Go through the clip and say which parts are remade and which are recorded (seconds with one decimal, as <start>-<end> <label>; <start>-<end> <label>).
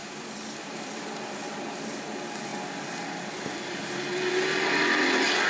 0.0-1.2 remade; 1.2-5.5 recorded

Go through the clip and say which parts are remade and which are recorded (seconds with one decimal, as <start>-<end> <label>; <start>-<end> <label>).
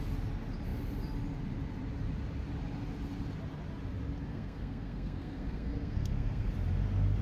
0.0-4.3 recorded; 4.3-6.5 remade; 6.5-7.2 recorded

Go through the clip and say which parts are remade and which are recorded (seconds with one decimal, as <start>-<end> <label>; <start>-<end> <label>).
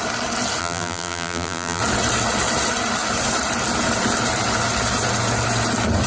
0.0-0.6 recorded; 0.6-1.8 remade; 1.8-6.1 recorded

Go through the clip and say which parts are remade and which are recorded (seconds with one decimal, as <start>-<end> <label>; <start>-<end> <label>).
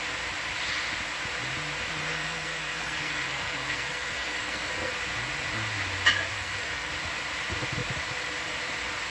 0.0-2.1 recorded; 2.1-4.9 remade; 4.9-6.3 recorded; 6.3-6.9 remade; 6.9-9.1 recorded